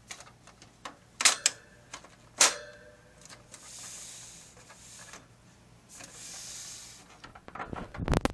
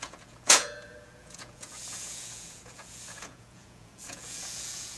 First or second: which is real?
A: first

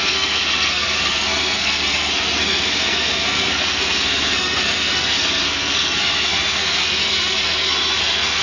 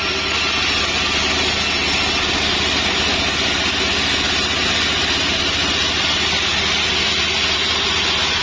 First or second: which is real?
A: second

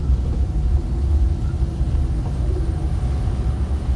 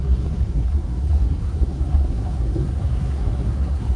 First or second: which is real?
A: first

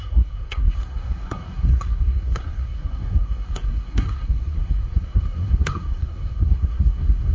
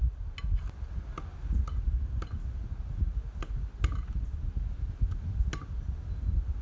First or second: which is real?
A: second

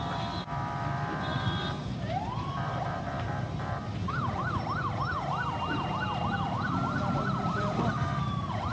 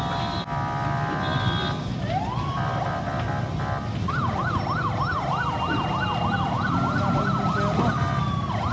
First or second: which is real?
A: second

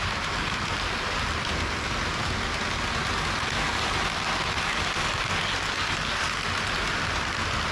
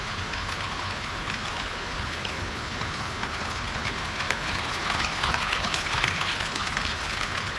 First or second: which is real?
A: first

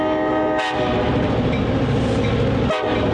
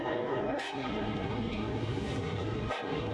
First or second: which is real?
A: first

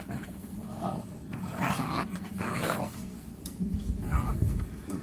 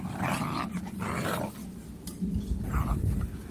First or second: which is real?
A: second